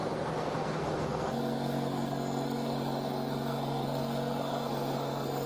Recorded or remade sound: remade